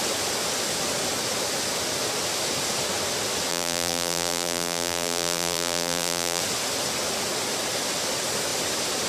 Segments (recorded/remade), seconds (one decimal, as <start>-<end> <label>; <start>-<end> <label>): 0.0-3.5 recorded; 3.5-6.4 remade; 6.4-9.1 recorded